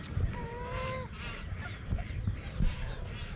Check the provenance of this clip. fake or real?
fake